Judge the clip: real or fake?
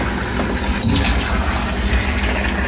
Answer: real